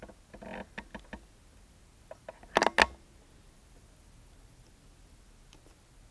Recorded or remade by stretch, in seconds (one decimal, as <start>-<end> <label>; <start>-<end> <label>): 0.0-6.1 recorded